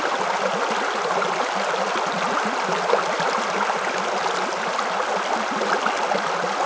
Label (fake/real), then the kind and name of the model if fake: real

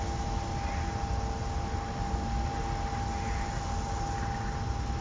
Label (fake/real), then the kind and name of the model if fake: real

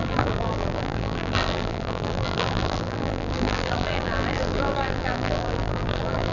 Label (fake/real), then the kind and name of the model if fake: fake, vocoder, BigVGAN v2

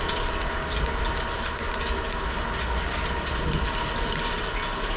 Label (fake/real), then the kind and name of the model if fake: real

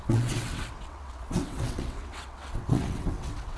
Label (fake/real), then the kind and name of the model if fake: fake, vocoder, WaveNeXt